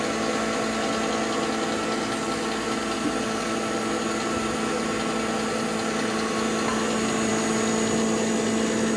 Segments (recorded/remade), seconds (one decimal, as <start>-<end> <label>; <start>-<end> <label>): 0.0-9.0 recorded